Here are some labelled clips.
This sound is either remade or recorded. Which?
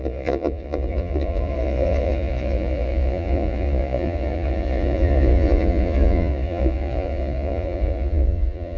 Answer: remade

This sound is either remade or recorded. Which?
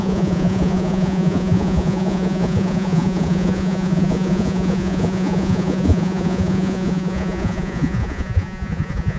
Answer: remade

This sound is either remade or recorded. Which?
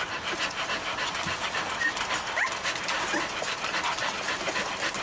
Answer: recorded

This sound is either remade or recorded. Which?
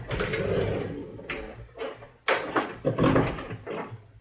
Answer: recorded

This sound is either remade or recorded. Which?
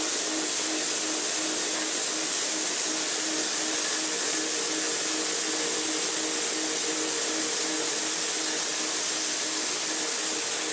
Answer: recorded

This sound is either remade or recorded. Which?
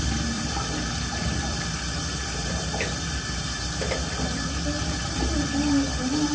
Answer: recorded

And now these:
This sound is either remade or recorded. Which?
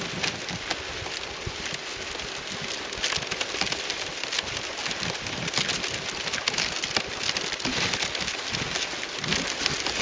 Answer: recorded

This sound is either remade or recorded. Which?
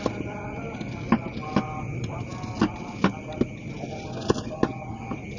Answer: recorded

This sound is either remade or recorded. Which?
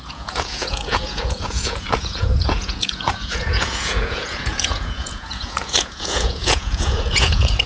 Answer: remade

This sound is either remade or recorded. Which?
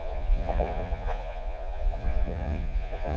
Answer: remade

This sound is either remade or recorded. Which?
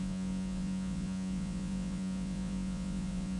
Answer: remade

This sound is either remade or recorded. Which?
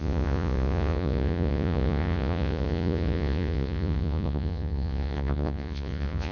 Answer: remade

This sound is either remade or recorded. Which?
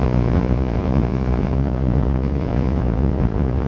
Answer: remade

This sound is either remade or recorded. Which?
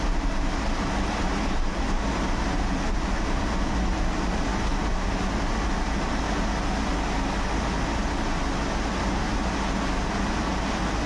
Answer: recorded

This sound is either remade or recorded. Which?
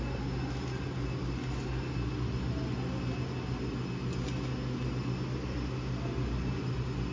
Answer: recorded